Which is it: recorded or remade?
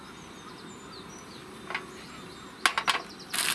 recorded